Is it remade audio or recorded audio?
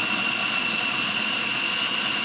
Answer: recorded